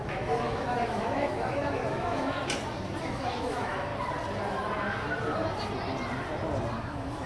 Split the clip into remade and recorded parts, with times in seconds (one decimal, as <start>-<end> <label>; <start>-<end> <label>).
0.0-2.4 remade; 2.4-3.0 recorded; 3.0-3.9 remade; 3.9-6.8 recorded; 6.8-7.3 remade